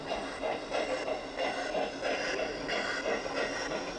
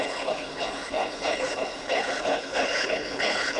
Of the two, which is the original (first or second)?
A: first